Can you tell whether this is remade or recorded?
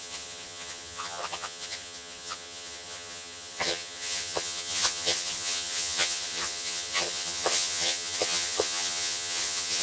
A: remade